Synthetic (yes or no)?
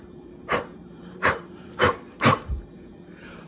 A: yes